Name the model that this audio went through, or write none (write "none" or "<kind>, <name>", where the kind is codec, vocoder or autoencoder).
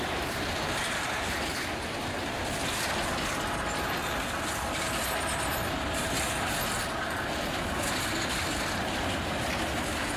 none